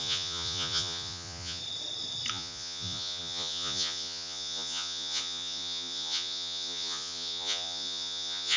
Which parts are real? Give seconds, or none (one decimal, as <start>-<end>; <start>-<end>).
1.6-2.3